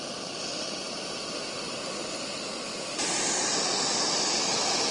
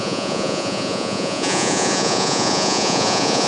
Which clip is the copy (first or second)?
second